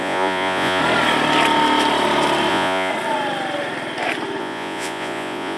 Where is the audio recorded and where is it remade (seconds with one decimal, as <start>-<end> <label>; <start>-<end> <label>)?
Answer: 0.0-0.8 remade; 0.8-2.5 recorded; 2.5-2.9 remade; 2.9-4.4 recorded; 4.4-5.6 remade